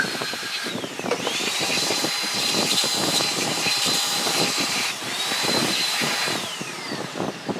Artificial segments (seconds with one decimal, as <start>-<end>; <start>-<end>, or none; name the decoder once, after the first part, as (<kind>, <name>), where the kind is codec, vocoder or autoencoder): 0.0-2.8 (vocoder, BigVGAN v2); 3.7-7.6